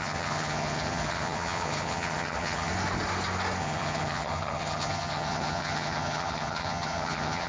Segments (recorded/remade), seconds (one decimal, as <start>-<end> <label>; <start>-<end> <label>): 0.0-2.7 remade; 2.7-3.6 recorded; 3.6-7.5 remade